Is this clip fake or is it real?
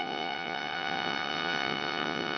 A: fake